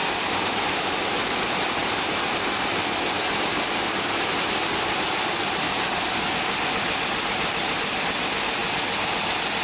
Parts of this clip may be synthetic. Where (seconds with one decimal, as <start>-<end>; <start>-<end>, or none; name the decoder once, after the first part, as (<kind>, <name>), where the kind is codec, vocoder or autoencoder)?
0.0-0.8 (vocoder, BigVGAN v2); 1.8-6.0